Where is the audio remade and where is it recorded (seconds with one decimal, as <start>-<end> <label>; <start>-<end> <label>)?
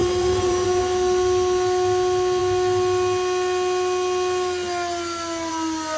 0.0-0.8 remade; 0.8-6.0 recorded